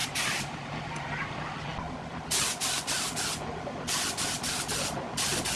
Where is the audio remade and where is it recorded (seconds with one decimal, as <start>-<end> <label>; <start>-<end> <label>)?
0.0-5.6 recorded